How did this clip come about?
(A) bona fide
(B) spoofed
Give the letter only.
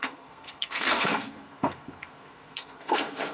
B